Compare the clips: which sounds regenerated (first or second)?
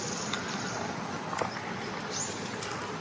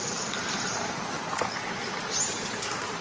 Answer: second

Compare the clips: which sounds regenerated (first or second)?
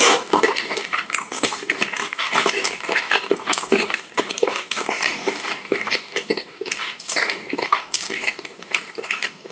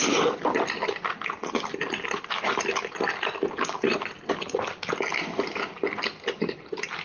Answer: first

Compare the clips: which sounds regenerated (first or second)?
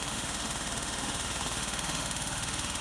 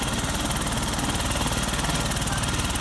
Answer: first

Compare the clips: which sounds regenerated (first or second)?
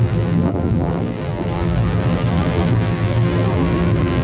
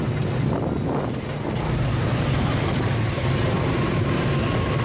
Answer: first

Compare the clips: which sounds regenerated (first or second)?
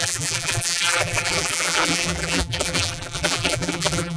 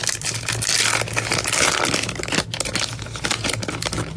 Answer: first